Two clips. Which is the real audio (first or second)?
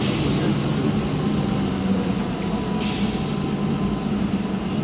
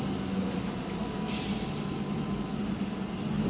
second